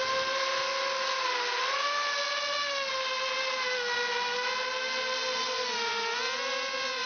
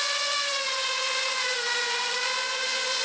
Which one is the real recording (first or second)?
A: first